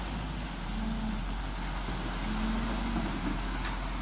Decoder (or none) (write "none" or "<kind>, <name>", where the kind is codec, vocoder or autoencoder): none